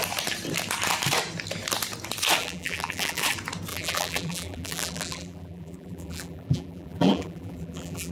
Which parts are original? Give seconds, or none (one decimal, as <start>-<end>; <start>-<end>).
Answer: 0.0-2.4; 3.2-3.7